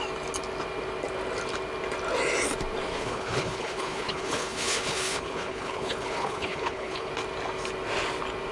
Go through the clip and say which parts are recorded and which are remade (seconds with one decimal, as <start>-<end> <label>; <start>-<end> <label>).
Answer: 0.0-2.9 recorded; 2.9-7.1 remade; 7.1-8.5 recorded